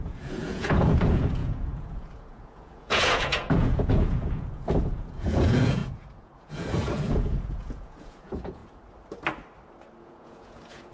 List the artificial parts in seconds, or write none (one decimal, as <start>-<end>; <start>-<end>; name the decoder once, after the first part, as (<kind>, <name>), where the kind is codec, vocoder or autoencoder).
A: 0.0-8.6 (vocoder, Vocos); 10.0-10.9